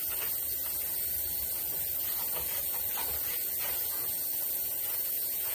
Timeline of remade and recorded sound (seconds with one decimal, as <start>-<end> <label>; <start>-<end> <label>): 0.0-3.3 recorded; 3.3-5.5 remade